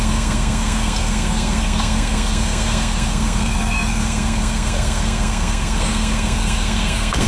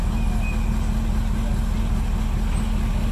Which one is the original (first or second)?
second